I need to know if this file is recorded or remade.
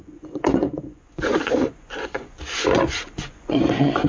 remade